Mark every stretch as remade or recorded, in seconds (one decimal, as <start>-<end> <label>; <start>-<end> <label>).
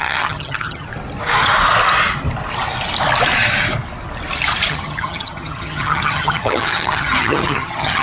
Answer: 0.0-0.9 remade; 0.9-4.7 recorded; 4.7-8.0 remade